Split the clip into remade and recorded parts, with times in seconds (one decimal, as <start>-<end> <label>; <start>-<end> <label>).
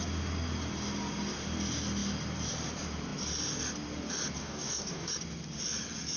0.0-4.4 recorded; 4.4-5.1 remade; 5.1-6.2 recorded